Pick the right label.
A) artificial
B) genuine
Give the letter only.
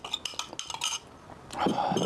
B